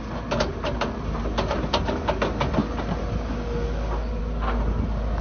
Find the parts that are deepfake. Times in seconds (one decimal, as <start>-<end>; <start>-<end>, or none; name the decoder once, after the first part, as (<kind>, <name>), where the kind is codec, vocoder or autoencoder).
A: none